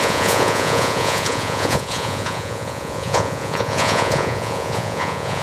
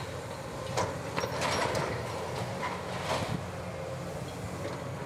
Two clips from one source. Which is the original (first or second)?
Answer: second